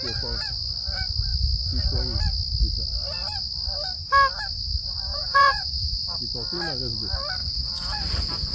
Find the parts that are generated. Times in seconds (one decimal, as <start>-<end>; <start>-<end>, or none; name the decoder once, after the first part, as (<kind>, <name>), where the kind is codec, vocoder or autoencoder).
5.1-6.2 (vocoder, Vocos); 7.4-8.5